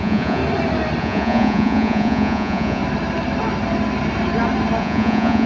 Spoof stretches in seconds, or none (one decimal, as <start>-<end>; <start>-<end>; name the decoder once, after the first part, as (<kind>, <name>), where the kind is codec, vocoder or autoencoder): 0.0-0.4 (vocoder, Vocos); 1.0-2.8; 4.8-5.5